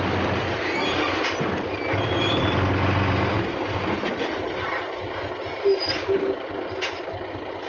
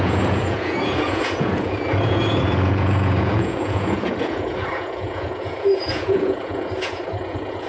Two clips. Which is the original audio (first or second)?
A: first